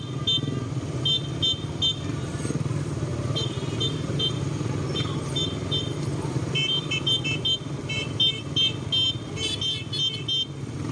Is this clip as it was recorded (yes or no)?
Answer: yes